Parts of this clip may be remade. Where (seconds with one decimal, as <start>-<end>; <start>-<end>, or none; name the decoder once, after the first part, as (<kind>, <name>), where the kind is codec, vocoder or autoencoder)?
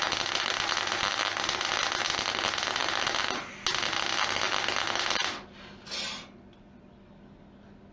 none